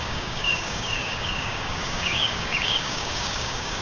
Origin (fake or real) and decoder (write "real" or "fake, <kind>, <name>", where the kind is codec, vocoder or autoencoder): fake, codec, DAC